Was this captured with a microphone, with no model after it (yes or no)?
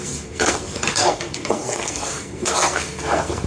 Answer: no